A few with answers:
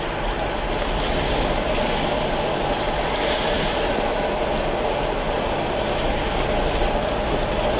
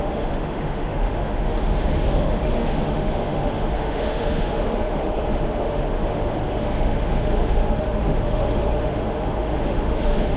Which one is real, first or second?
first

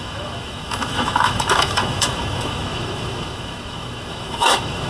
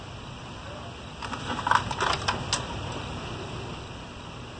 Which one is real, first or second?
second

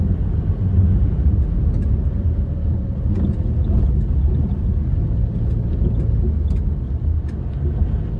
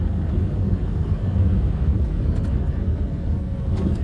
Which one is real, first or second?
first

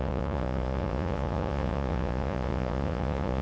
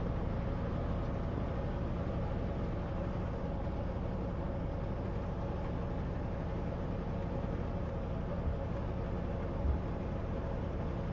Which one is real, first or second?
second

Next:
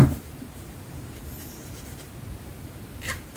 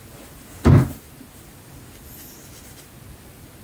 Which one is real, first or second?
second